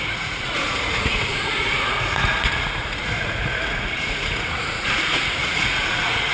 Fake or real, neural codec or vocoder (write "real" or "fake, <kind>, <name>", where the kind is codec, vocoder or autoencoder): fake, vocoder, Vocos